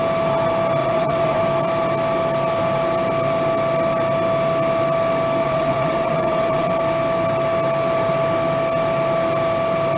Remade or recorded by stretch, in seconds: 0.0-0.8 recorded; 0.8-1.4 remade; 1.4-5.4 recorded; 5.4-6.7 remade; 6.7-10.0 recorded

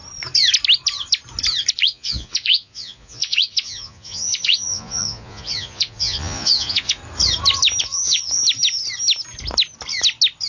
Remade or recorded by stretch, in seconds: 0.0-1.7 recorded; 1.7-7.0 remade; 7.0-7.8 recorded; 7.8-8.4 remade; 8.4-10.5 recorded

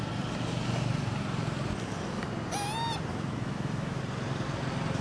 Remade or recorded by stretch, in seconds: 0.0-3.1 recorded; 3.1-4.0 remade; 4.0-5.0 recorded

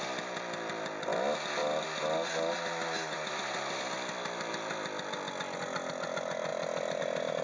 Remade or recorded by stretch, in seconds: 0.0-1.6 recorded; 1.6-4.5 remade; 4.5-6.5 recorded; 6.5-7.0 remade; 7.0-7.4 recorded